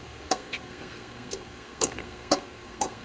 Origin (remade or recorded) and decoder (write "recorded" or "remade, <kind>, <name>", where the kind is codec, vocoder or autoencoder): remade, codec, SNAC